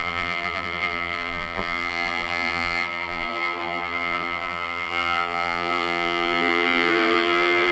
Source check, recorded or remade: remade